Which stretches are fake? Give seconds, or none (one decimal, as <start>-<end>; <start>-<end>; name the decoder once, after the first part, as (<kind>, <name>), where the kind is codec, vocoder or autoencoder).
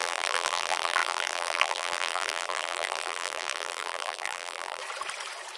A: 0.0-4.8 (vocoder, BigVGAN v2)